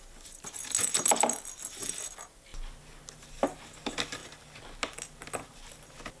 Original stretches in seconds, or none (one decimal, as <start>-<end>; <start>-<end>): 0.0-6.2